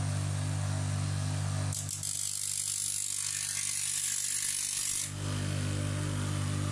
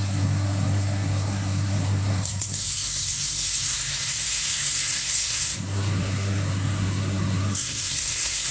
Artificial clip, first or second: second